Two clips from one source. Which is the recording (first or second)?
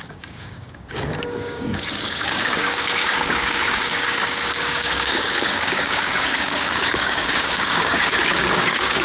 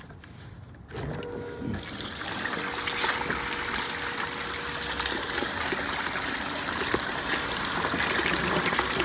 second